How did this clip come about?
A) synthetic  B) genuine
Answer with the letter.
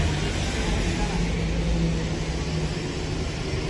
B